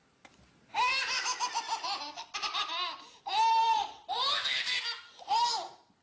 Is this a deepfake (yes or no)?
no